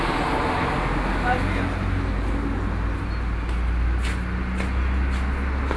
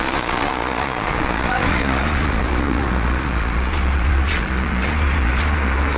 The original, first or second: first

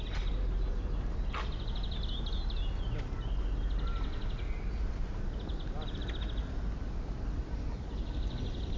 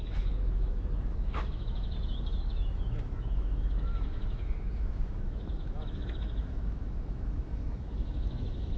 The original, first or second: first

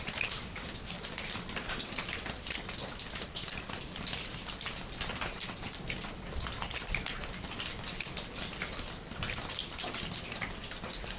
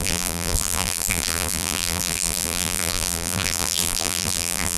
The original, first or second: first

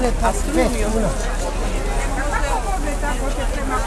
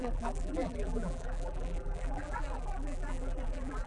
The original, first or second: first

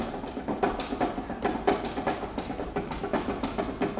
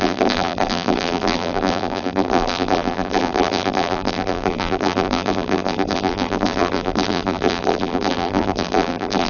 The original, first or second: first